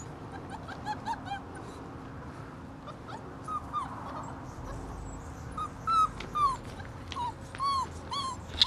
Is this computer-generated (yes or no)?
no